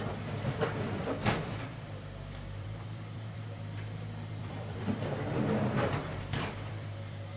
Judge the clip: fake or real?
fake